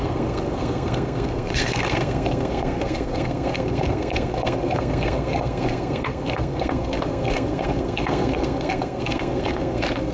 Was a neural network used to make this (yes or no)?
yes